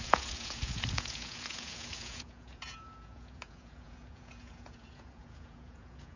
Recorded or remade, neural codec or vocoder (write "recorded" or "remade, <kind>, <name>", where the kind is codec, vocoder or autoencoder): remade, vocoder, Vocos